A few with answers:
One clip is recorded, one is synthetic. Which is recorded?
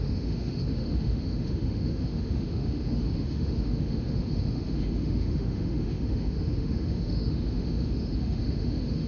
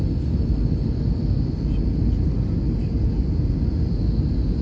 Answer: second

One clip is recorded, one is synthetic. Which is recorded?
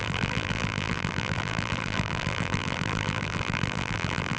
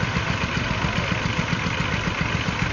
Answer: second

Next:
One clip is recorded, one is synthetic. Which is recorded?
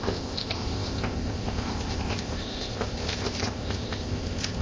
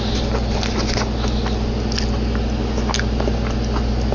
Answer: second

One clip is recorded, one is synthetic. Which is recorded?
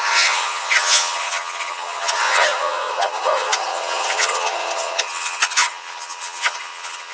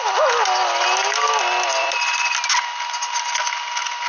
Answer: second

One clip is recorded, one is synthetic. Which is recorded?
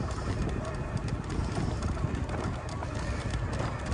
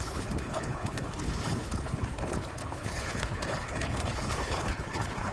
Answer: first